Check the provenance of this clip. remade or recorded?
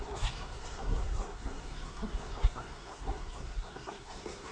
remade